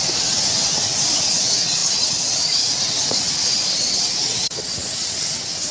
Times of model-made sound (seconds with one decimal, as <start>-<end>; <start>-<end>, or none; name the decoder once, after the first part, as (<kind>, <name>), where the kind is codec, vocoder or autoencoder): 0.0-5.7 (vocoder, WaveNeXt)